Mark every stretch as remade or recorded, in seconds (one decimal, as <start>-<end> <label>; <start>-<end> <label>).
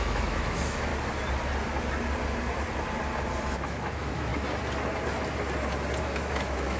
0.0-0.9 remade; 0.9-3.4 recorded; 3.4-4.3 remade; 4.3-6.0 recorded; 6.0-6.8 remade